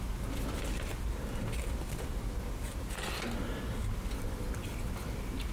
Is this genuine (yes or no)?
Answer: yes